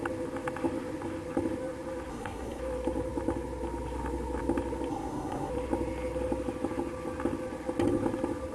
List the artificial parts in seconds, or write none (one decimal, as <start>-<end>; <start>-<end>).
2.1-2.6; 4.9-5.5